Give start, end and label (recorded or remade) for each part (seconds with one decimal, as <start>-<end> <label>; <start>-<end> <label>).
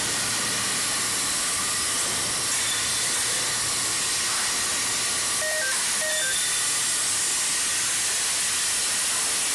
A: 0.0-9.5 recorded